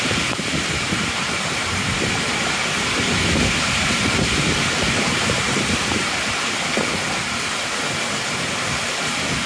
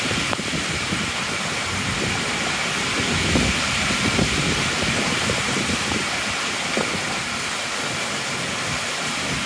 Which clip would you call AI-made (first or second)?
first